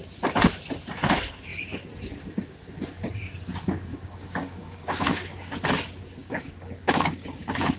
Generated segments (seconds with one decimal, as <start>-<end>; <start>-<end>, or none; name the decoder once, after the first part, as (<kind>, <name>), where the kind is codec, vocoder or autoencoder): 3.9-5.5 (codec, DAC); 6.2-7.8